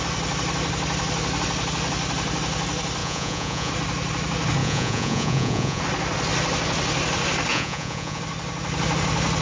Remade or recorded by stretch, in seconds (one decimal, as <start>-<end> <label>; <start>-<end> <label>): 0.0-3.0 recorded; 3.0-3.7 remade; 3.7-4.6 recorded; 4.6-5.8 remade; 5.8-7.5 recorded; 7.5-8.2 remade; 8.2-9.4 recorded